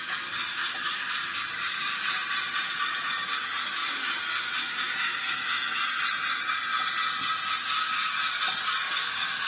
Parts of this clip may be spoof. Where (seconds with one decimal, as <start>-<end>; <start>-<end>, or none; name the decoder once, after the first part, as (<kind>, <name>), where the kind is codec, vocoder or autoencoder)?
0.0-2.2 (codec, DAC); 3.2-5.7; 7.6-9.5